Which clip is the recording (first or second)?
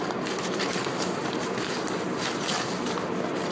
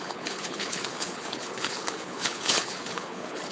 first